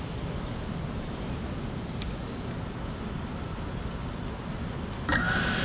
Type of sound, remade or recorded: recorded